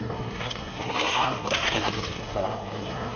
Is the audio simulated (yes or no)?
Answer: yes